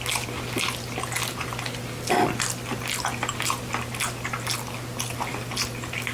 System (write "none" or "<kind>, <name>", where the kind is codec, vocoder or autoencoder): none